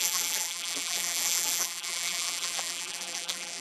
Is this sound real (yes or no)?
no